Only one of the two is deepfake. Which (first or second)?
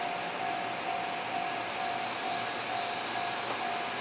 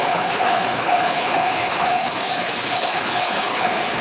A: second